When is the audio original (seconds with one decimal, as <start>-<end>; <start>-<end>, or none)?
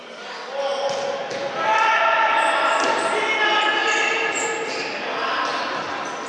0.0-6.3